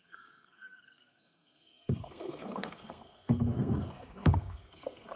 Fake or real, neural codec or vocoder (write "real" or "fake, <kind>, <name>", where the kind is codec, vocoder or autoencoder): fake, codec, SNAC